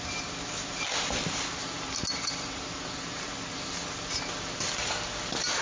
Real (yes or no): yes